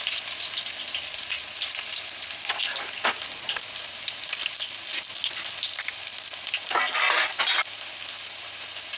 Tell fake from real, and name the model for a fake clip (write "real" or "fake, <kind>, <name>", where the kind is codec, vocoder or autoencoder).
real